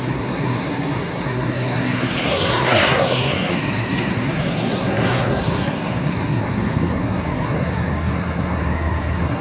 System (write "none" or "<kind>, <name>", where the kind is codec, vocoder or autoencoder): codec, SNAC